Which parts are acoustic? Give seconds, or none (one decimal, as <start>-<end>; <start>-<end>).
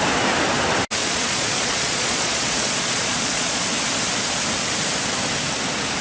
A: 0.0-1.0; 3.6-6.0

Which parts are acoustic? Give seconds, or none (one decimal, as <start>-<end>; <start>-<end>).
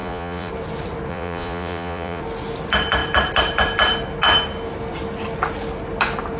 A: 0.5-1.1; 2.2-6.4